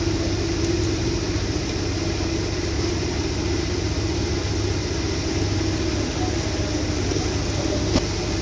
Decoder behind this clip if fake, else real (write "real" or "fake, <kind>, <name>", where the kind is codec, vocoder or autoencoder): real